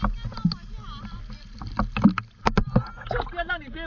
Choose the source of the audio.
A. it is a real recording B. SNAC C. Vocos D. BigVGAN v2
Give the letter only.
A